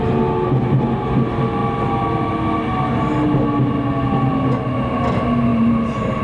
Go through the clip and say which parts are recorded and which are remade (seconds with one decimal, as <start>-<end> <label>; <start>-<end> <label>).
0.0-5.5 recorded; 5.5-6.2 remade